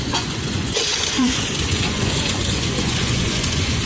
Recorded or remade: remade